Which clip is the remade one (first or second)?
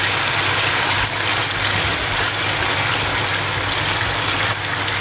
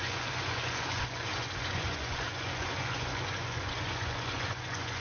second